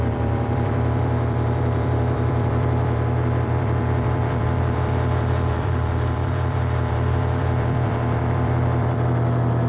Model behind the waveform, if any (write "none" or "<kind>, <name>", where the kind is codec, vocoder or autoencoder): vocoder, BigVGAN v2